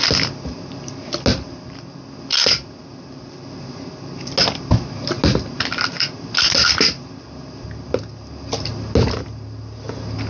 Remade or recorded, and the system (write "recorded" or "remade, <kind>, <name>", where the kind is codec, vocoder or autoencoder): recorded